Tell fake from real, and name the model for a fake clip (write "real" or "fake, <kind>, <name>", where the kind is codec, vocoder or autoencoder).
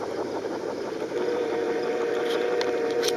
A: fake, vocoder, BigVGAN v2